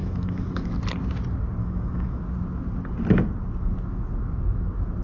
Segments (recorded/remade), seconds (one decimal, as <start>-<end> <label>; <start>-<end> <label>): 0.0-0.7 remade; 0.7-1.6 recorded; 1.6-2.2 remade; 2.2-5.0 recorded